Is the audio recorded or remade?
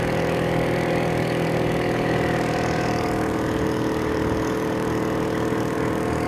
remade